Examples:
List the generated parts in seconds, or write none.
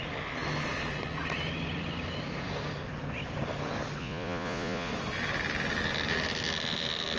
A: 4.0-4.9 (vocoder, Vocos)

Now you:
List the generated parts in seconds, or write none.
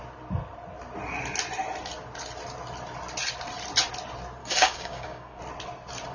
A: 4.4-5.4 (codec, DAC)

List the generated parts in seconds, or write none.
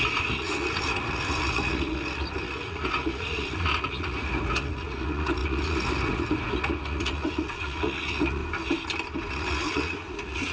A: 0.0-8.4 (vocoder, Vocos); 9.3-10.5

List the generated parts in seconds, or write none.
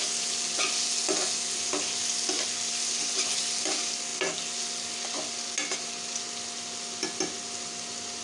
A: none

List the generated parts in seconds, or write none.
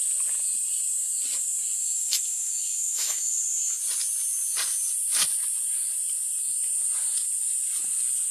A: 1.8-3.4 (autoencoder, DAC-VAE)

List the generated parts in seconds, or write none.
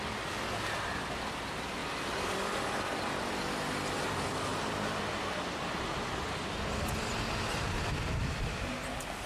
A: 4.5-5.0 (vocoder, BigVGAN v2)